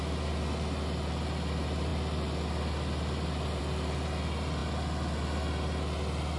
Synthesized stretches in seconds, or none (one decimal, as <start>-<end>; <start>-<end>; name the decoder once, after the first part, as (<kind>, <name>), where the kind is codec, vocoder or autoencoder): none